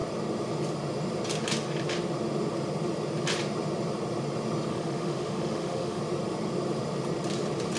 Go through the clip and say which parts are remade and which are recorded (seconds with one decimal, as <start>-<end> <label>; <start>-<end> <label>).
0.0-4.7 recorded; 4.7-6.0 remade; 6.0-7.8 recorded